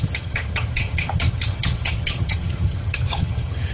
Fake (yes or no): yes